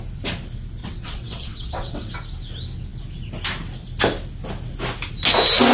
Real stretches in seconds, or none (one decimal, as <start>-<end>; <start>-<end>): 0.0-0.8; 2.1-5.7